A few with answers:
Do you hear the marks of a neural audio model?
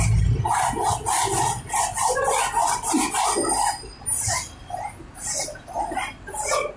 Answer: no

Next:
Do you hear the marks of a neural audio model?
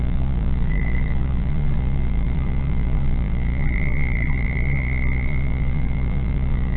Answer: yes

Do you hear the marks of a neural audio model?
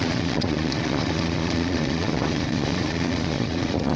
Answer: yes